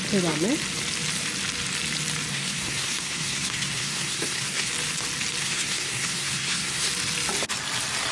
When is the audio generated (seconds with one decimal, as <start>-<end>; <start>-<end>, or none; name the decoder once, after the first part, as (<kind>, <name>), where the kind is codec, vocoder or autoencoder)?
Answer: 2.3-4.7 (codec, SNAC); 5.4-6.9

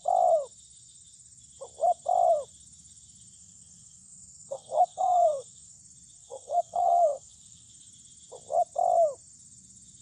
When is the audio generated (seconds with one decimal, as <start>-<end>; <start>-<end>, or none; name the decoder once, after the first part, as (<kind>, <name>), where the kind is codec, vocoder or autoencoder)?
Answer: 3.4-5.8 (codec, SNAC); 6.2-7.7

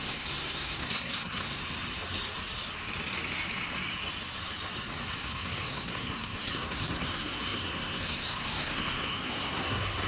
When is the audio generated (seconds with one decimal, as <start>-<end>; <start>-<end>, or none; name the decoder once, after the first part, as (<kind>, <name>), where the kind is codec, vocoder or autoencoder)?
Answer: 0.0-1.6 (codec, SNAC); 5.1-10.1